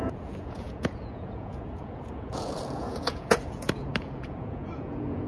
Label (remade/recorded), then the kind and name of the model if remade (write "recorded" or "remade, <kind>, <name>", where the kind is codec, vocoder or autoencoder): remade, vocoder, Vocos